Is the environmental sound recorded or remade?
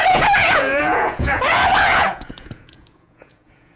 remade